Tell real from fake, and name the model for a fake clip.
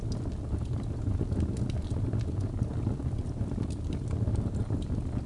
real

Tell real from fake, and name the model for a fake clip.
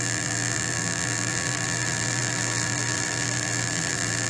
fake, vocoder, BigVGAN v2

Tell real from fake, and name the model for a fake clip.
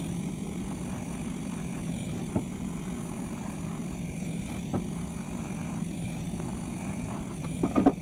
real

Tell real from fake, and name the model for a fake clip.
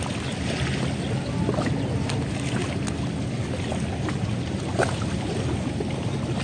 real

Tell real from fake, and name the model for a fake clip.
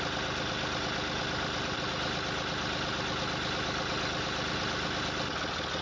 real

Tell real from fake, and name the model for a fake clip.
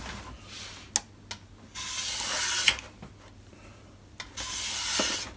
real